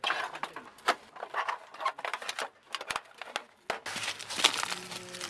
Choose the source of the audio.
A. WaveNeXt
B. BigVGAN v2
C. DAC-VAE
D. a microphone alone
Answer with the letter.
D